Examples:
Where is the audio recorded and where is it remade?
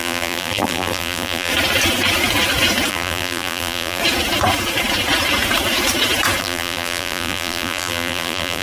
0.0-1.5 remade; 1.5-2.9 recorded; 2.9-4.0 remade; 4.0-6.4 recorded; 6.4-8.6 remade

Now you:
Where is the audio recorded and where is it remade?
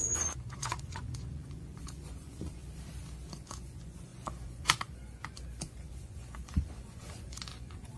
0.0-2.6 remade; 2.6-3.3 recorded; 3.3-8.0 remade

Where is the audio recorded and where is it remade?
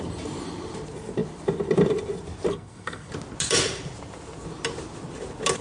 0.0-2.5 recorded; 2.5-3.1 remade; 3.1-5.6 recorded